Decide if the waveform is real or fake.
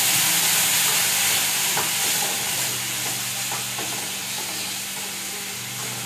real